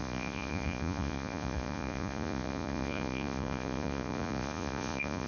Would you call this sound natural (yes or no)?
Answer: no